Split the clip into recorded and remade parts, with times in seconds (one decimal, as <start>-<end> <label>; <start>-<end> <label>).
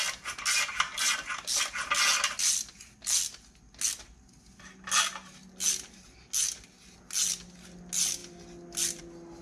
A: 0.0-9.4 recorded